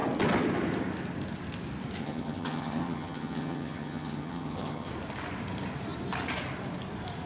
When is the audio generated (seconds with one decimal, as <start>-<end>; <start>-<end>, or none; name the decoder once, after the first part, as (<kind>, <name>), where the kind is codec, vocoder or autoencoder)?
2.0-4.9 (vocoder, HiFi-GAN)